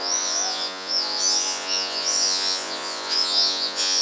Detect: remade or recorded remade